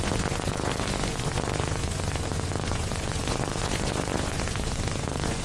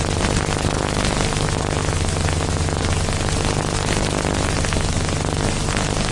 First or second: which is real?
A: second